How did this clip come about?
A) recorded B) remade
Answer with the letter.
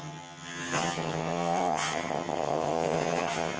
B